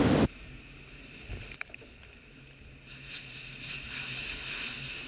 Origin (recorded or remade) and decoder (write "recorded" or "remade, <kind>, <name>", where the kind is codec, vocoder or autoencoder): recorded